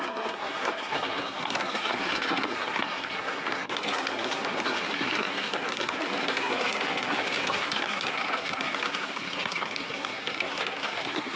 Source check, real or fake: fake